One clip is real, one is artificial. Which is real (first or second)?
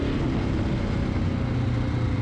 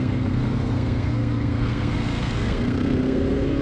first